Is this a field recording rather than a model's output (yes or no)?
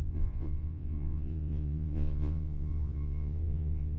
no